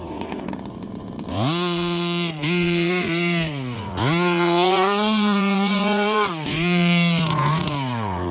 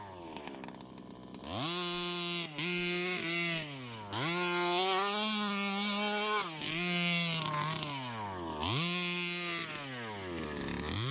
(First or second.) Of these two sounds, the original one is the second